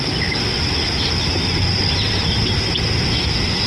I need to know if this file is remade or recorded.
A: recorded